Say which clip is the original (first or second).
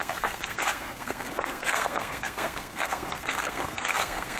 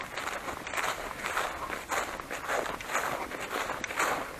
second